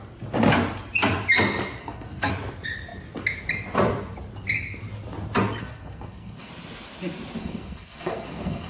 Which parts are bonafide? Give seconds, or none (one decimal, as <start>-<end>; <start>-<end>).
0.0-1.8; 2.3-5.6; 6.5-7.4